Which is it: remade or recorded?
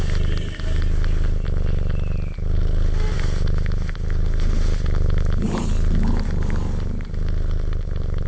recorded